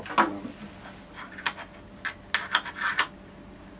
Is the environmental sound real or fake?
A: real